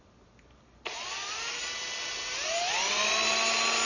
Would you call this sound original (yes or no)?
yes